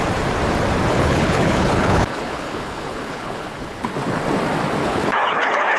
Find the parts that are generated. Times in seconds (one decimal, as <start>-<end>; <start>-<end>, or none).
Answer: 0.9-3.8; 4.8-5.8

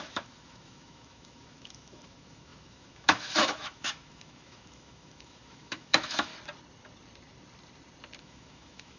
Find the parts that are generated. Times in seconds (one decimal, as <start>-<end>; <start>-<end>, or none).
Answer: 0.0-6.3; 8.2-9.0

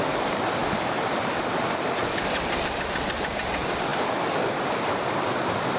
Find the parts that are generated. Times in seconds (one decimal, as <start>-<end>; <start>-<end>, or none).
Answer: none

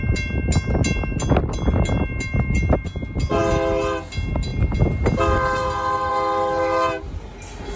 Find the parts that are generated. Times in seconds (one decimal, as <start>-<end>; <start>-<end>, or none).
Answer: none

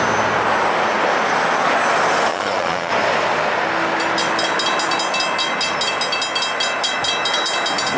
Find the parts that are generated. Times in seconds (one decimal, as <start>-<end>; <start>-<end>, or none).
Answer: 2.3-2.9